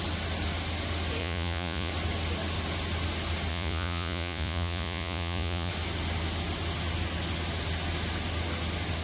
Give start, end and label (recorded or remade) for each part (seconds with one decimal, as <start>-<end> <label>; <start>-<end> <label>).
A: 0.0-1.2 recorded; 1.2-1.9 remade; 1.9-3.5 recorded; 3.5-5.7 remade; 5.7-9.0 recorded